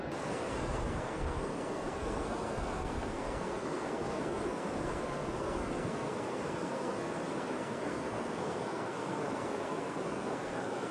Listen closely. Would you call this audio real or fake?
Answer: fake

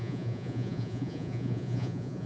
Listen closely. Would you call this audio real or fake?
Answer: fake